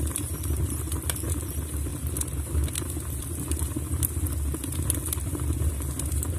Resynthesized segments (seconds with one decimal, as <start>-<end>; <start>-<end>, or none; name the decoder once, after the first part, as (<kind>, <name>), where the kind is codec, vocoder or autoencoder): none